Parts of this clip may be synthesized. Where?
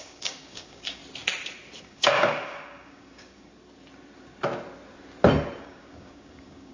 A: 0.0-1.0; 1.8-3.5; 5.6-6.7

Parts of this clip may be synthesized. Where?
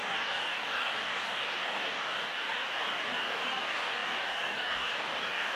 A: 0.0-5.6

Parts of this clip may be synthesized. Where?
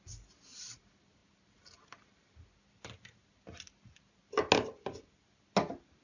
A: none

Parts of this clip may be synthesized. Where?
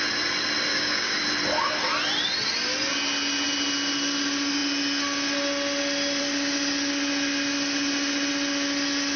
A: 0.7-1.2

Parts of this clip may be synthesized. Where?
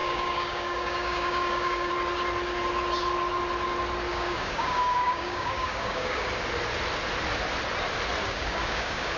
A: 0.0-1.9; 4.1-6.3; 8.2-9.2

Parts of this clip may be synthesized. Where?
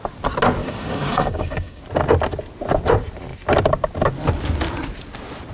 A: 0.6-1.8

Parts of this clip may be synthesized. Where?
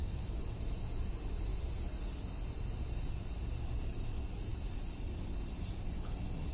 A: 0.0-0.6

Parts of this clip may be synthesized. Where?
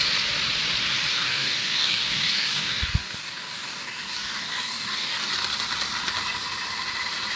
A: 1.1-5.3